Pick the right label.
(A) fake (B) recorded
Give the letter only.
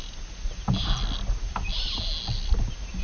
B